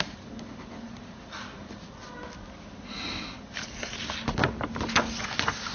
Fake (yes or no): no